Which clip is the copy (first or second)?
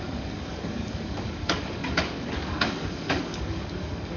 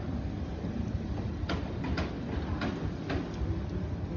first